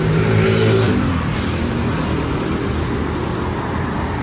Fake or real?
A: real